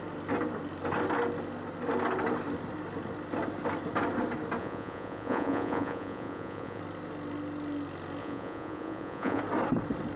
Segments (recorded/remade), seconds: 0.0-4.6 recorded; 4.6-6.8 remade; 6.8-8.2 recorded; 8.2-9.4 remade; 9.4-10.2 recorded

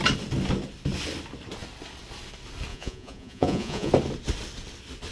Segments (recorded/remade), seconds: 0.0-2.7 recorded; 2.7-3.9 remade; 3.9-5.1 recorded

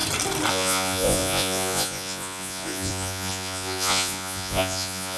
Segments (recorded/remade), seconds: 0.0-0.5 recorded; 0.5-5.2 remade

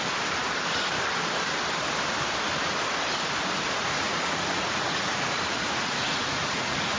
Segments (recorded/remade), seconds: 0.0-3.8 recorded; 3.8-7.0 remade

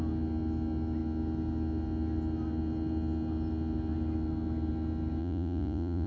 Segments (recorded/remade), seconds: 0.0-5.2 recorded; 5.2-6.1 remade